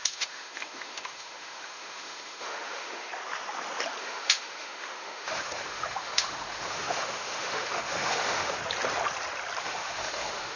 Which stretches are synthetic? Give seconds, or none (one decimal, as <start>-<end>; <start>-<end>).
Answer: 0.0-3.1; 4.0-8.6; 9.6-10.6

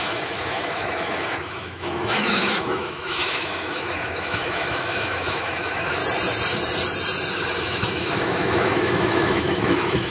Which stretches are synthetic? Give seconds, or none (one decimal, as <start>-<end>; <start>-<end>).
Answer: 0.0-6.0; 7.3-10.1